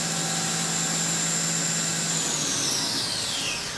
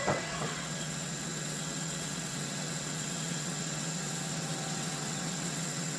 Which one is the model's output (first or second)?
second